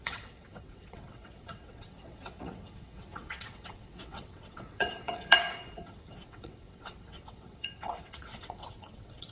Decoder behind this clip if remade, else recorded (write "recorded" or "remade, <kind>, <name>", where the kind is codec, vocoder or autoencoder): remade, vocoder, WaveNeXt